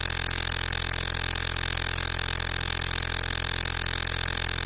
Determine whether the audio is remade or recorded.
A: recorded